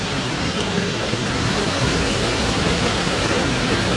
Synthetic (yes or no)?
yes